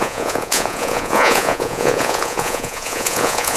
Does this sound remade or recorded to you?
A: remade